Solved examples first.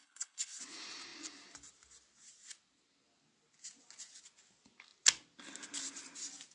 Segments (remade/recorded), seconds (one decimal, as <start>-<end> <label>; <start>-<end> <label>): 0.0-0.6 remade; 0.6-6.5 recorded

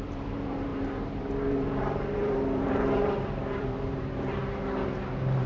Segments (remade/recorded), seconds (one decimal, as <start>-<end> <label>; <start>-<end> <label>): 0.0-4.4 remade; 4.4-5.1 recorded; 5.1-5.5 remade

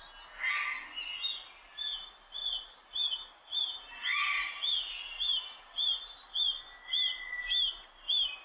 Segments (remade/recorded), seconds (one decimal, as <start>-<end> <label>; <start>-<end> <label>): 0.0-8.4 recorded

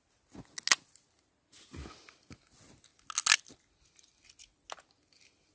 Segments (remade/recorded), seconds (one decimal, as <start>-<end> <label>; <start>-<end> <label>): 0.0-5.5 recorded